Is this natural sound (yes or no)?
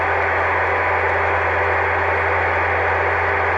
yes